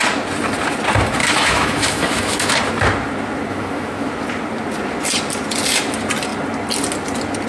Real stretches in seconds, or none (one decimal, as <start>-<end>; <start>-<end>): 0.0-1.2; 2.5-3.5; 4.1-7.5